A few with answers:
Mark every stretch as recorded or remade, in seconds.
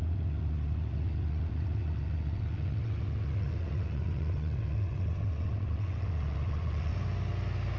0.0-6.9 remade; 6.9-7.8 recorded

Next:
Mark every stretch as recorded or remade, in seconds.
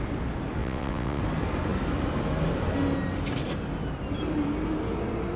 0.0-0.6 recorded; 0.6-1.2 remade; 1.2-5.4 recorded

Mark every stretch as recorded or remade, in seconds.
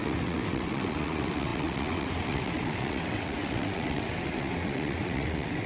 0.0-5.7 remade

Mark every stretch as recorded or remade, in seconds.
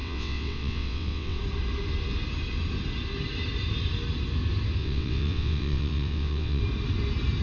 0.0-1.4 remade; 1.4-4.8 recorded; 4.8-6.6 remade; 6.6-7.4 recorded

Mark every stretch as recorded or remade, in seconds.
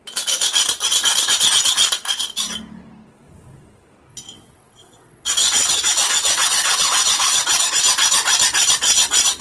0.0-4.1 recorded; 4.1-7.8 remade; 7.8-9.4 recorded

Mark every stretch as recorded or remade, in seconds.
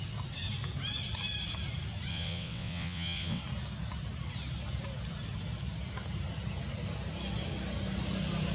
0.0-2.1 recorded; 2.1-3.4 remade; 3.4-8.5 recorded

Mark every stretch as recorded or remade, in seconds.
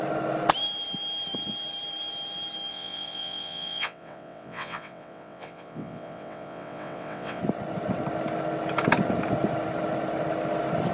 0.0-2.7 recorded; 2.7-7.4 remade; 7.4-10.9 recorded